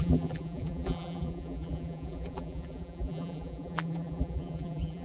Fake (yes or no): yes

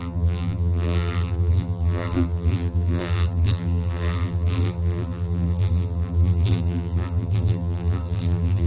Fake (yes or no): yes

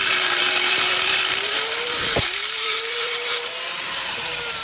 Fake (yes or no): yes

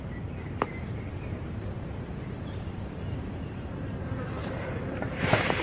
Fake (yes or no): yes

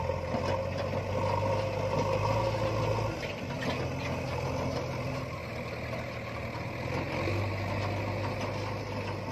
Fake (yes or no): no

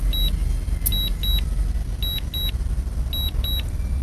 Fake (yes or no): no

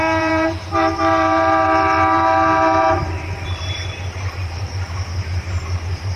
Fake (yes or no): yes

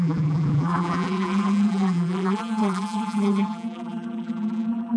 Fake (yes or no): yes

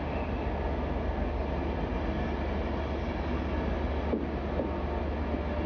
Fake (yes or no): no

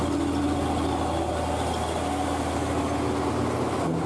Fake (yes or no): no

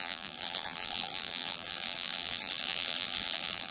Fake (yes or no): yes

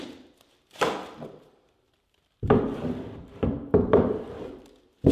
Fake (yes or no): yes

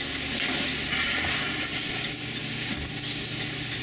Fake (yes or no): no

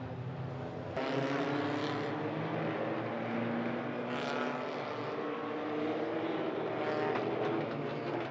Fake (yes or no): no